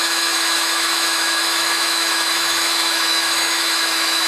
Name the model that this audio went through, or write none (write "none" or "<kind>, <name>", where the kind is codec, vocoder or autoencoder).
autoencoder, DAC-VAE